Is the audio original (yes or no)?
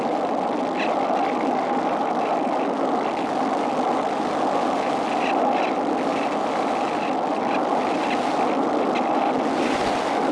yes